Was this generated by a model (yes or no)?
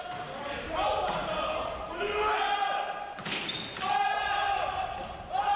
no